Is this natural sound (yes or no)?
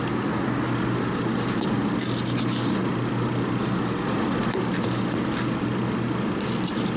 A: yes